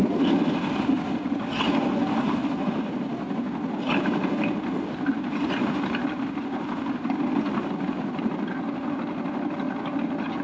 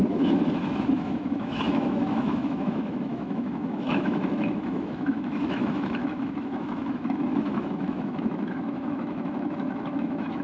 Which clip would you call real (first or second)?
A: first